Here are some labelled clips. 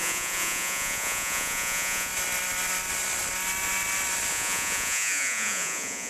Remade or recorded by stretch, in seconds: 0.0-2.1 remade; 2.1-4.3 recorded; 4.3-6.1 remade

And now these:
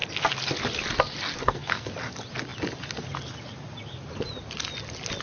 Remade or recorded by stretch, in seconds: 0.0-1.3 recorded; 1.3-1.9 remade; 1.9-5.2 recorded

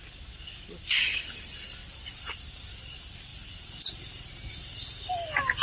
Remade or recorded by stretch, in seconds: 0.0-5.6 recorded